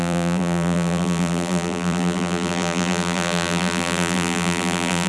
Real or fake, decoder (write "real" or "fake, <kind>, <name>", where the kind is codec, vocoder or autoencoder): fake, vocoder, BigVGAN v2